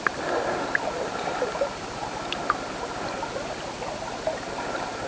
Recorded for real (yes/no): yes